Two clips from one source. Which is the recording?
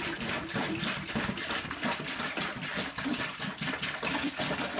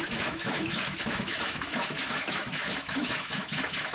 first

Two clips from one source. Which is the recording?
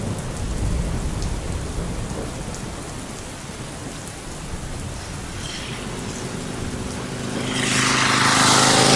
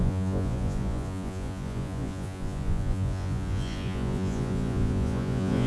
first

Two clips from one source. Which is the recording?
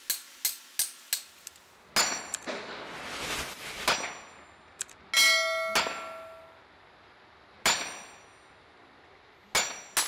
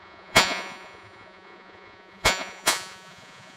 first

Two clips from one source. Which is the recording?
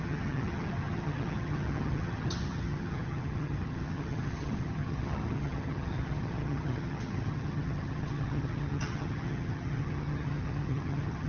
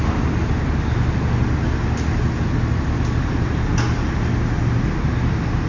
second